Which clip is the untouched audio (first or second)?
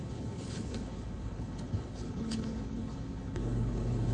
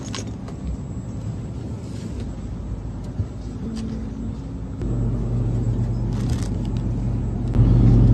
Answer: second